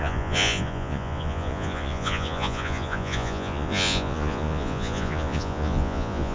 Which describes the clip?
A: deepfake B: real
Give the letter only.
A